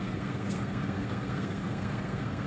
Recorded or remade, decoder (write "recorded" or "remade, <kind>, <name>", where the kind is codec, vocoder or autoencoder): remade, codec, SNAC